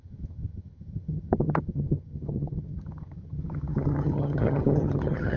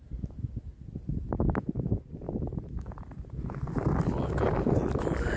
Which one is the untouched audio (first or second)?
second